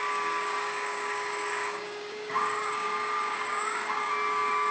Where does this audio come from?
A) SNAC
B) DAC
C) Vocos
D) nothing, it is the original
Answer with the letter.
B